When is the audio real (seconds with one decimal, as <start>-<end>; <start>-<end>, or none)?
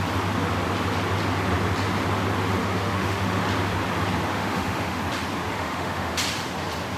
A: 0.0-2.6; 3.4-4.3; 5.0-5.5; 6.2-7.0